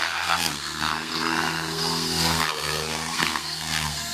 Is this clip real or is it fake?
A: fake